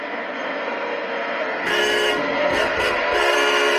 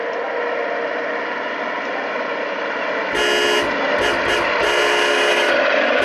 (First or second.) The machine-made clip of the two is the first